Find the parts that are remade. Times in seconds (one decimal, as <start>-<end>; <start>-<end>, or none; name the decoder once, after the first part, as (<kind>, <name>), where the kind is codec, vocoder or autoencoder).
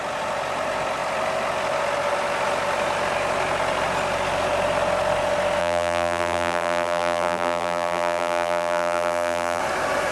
5.6-9.6 (vocoder, BigVGAN v2)